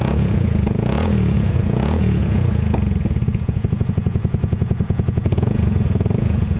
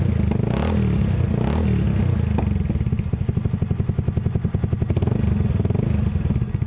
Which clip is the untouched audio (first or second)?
second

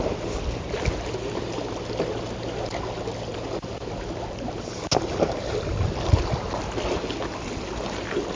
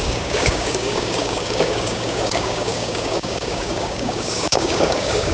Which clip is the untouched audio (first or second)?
first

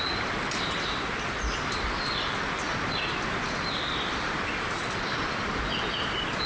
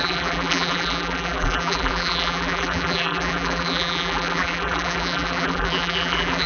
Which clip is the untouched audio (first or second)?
first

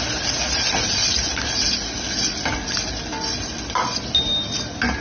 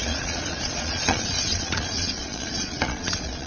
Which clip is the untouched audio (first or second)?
first